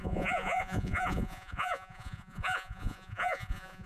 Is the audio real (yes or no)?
no